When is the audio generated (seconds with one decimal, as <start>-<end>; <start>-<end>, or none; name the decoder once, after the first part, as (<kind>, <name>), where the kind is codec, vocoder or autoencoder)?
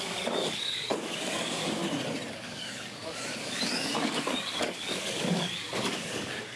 0.0-1.8 (codec, DAC); 2.3-6.6